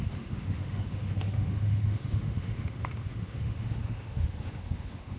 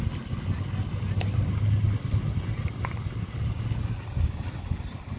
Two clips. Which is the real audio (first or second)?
second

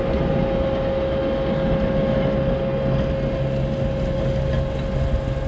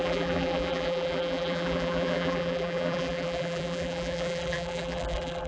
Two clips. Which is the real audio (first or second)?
first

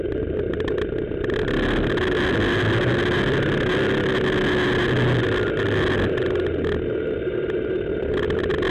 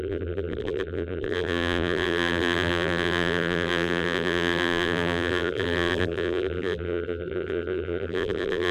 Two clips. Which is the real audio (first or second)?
first